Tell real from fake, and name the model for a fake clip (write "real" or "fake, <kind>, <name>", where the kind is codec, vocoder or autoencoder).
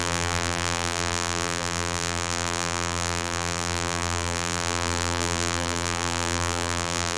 fake, vocoder, BigVGAN v2